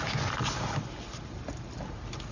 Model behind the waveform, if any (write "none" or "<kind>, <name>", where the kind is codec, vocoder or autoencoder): none